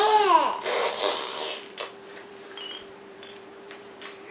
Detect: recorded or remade remade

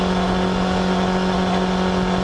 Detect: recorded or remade recorded